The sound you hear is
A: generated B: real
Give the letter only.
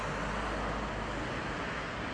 B